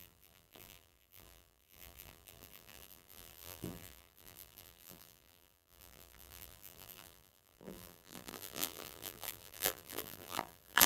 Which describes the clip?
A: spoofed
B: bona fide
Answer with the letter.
A